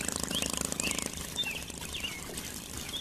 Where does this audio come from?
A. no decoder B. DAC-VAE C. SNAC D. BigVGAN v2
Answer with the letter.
A